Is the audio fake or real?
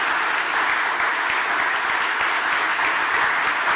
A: real